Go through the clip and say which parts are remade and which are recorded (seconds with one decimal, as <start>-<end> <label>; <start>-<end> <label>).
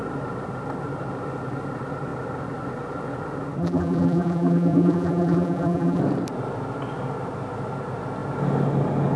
0.0-3.6 recorded; 3.6-6.0 remade; 6.0-9.2 recorded